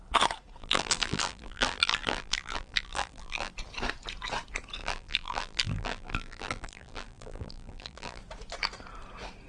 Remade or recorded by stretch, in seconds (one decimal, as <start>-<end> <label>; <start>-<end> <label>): 0.0-0.6 recorded; 0.6-3.5 remade; 3.5-4.8 recorded; 4.8-8.2 remade; 8.2-9.5 recorded